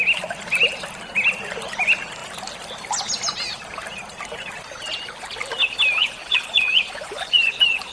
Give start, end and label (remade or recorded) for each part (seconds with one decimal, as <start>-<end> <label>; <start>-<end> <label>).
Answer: 0.0-6.0 recorded; 6.0-7.9 remade